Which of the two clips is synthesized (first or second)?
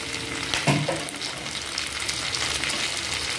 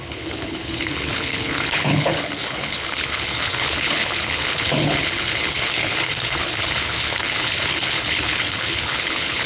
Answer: second